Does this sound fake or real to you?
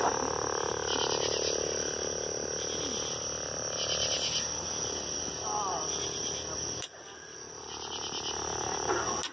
real